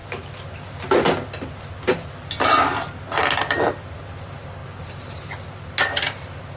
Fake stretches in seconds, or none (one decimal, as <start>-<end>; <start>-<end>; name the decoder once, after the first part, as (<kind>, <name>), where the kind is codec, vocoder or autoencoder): 4.6-5.3 (vocoder, BigVGAN v2)